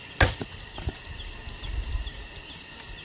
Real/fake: real